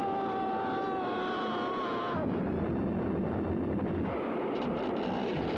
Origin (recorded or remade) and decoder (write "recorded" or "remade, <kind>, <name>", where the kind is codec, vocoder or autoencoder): recorded